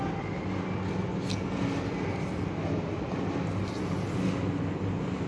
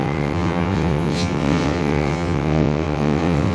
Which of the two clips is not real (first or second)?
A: second